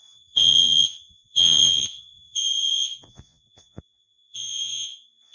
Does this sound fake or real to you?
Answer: fake